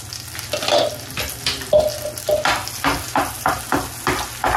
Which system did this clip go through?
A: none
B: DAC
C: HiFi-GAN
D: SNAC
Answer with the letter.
A